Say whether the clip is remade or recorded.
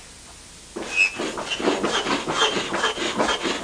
recorded